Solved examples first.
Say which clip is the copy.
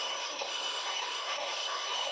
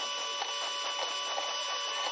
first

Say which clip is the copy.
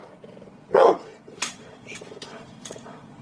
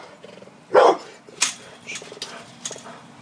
first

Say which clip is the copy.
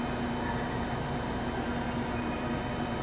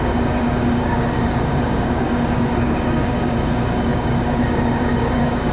second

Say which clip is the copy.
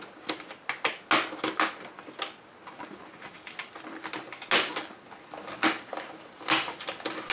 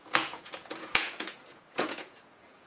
second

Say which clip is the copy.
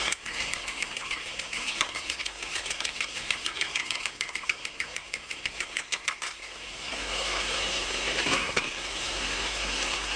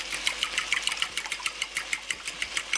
first